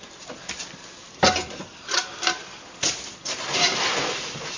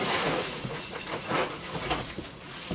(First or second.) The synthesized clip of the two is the second